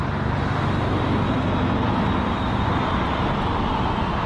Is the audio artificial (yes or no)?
no